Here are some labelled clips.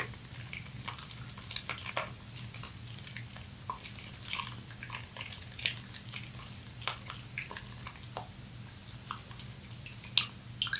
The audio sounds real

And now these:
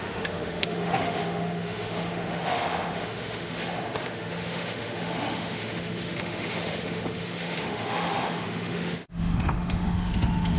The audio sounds fake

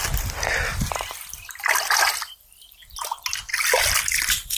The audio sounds real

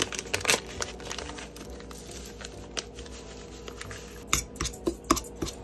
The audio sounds real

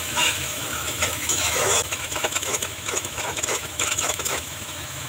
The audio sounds fake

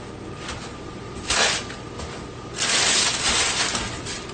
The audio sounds real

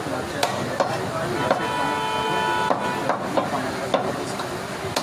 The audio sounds real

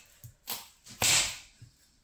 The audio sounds real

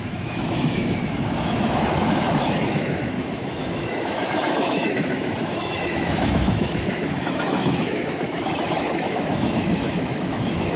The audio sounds fake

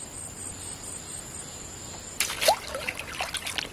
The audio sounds real